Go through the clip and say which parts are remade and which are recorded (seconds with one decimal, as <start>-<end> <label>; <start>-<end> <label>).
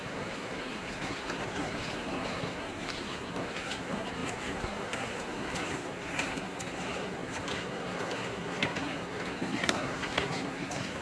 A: 0.0-11.0 remade